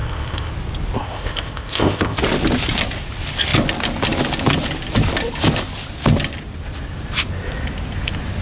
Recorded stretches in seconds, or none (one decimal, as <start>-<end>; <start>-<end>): 0.5-1.0; 2.2-8.4